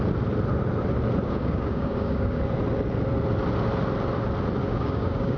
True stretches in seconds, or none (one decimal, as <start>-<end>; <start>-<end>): 0.0-1.2; 2.4-4.6